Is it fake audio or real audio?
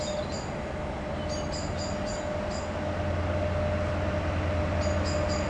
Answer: real